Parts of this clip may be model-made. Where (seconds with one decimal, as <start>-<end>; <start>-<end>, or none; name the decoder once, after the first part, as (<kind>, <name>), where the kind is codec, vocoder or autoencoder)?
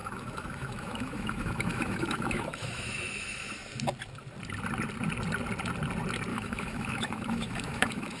0.0-3.5 (autoencoder, DAC-VAE); 6.3-8.2